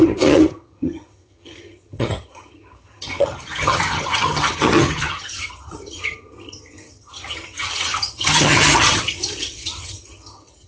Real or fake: fake